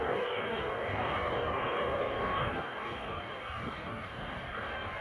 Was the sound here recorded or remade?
remade